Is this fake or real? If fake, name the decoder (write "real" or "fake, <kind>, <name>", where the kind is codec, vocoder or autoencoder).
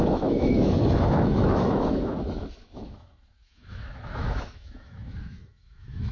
fake, autoencoder, DAC-VAE